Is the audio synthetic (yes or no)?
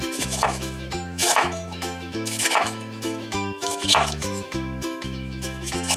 yes